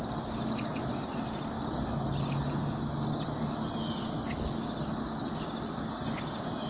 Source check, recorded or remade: recorded